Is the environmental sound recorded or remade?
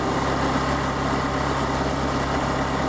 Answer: recorded